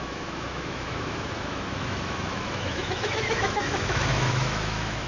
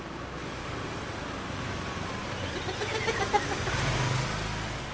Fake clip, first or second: first